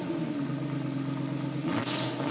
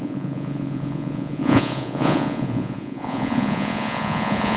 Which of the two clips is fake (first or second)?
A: second